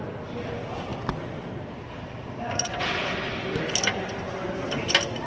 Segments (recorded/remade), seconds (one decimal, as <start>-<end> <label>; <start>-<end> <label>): 0.0-5.3 recorded